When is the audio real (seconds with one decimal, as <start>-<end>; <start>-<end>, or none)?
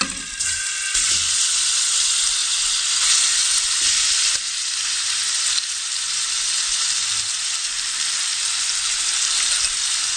0.0-10.2